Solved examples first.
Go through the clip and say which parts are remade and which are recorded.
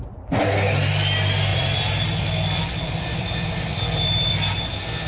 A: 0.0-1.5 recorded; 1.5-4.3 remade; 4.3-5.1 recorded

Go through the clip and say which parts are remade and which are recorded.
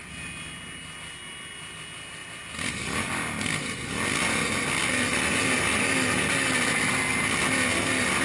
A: 0.0-8.2 recorded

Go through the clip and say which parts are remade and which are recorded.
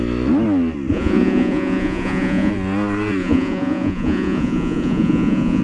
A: 0.0-0.9 recorded; 0.9-2.5 remade; 2.5-3.2 recorded; 3.2-5.6 remade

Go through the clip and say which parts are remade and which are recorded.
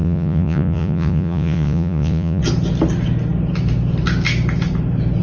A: 0.0-2.4 remade; 2.4-5.2 recorded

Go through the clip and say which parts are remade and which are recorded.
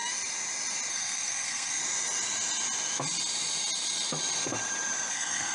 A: 0.0-0.9 recorded; 0.9-1.8 remade; 1.8-5.1 recorded; 5.1-5.5 remade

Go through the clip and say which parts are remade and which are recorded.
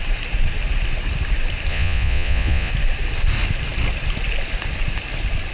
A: 0.0-1.7 recorded; 1.7-2.7 remade; 2.7-5.5 recorded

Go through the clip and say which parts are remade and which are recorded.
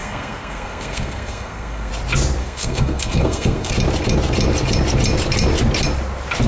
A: 0.0-1.9 remade; 1.9-2.4 recorded; 2.4-3.7 remade; 3.7-6.5 recorded